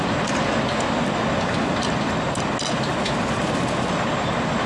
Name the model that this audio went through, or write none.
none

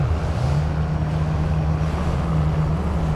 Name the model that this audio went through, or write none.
none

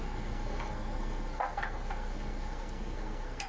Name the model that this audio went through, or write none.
codec, SNAC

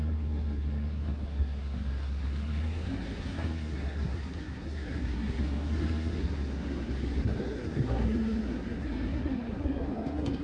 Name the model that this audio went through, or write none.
codec, SNAC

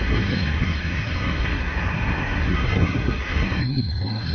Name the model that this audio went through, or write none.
codec, SNAC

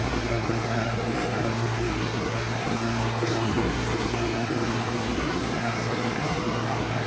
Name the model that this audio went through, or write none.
codec, SNAC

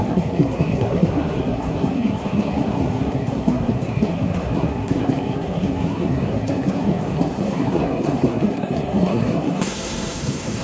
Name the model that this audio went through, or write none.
codec, SNAC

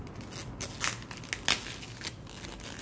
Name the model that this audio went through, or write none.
none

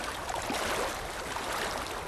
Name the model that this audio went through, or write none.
none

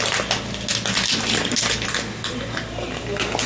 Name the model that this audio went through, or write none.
none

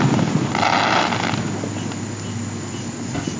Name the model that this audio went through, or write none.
none